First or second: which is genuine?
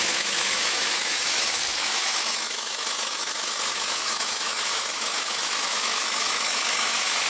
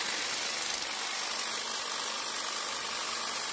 second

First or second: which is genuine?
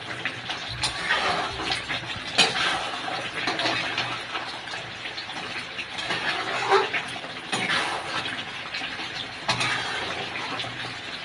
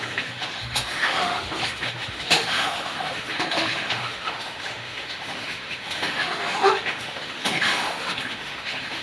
first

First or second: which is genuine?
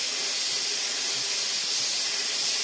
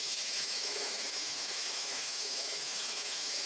first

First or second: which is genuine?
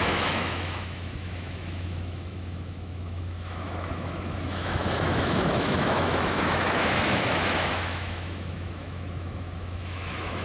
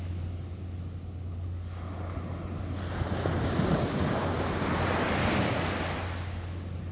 second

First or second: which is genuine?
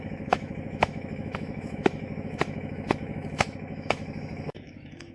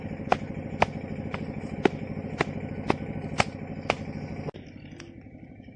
second